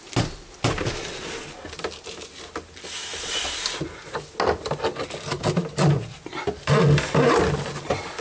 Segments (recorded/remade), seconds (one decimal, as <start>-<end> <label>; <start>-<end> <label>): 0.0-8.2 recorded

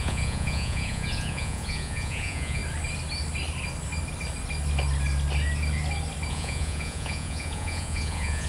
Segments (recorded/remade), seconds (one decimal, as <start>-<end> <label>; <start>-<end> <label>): 0.0-2.6 remade; 2.6-6.3 recorded; 6.3-8.5 remade

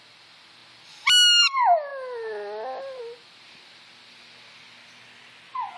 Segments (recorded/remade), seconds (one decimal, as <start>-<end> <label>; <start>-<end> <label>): 0.0-5.8 recorded